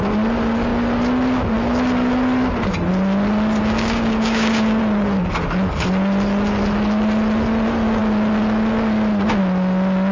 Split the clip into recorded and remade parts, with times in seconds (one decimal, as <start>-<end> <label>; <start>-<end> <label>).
0.0-3.6 recorded; 3.6-4.8 remade; 4.8-10.1 recorded